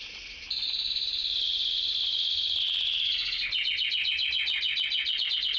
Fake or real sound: real